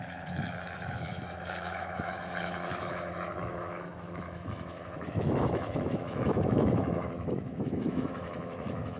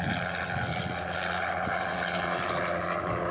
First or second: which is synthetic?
first